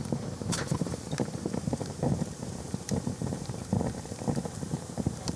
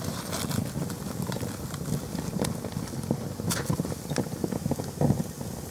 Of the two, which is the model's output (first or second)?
first